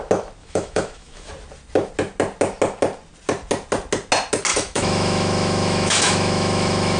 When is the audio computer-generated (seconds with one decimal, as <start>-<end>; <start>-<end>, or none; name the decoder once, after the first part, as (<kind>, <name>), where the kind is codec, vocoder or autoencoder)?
0.4-1.3 (autoencoder, DAC-VAE); 4.5-7.0